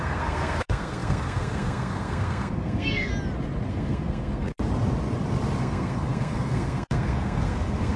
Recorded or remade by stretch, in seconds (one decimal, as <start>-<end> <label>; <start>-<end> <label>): 0.0-3.1 remade; 3.1-3.7 recorded; 3.7-4.5 remade; 4.5-5.6 recorded; 5.6-8.0 remade

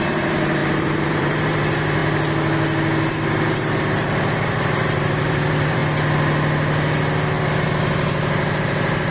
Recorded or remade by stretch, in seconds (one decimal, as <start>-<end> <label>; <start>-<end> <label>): 0.0-2.0 remade; 2.0-3.1 recorded; 3.1-5.8 remade; 5.8-8.6 recorded; 8.6-9.1 remade

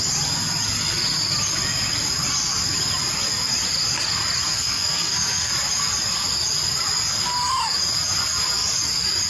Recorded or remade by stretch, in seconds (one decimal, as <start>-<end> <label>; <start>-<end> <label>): 0.0-4.5 recorded; 4.5-5.5 remade; 5.5-9.3 recorded

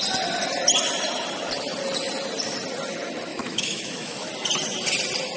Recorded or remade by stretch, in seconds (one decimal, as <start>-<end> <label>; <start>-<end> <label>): 0.0-3.3 recorded; 3.3-4.3 remade; 4.3-5.4 recorded

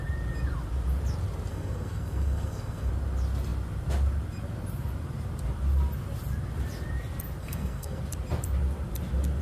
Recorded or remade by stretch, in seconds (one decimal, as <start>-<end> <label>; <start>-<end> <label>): 0.0-1.5 recorded; 1.5-2.9 remade; 2.9-7.4 recorded; 7.4-8.0 remade; 8.0-9.4 recorded

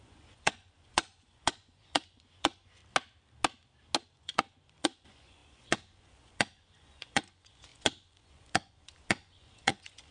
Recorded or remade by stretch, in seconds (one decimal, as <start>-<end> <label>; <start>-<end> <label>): 0.0-2.8 remade; 2.8-4.1 recorded; 4.1-10.1 remade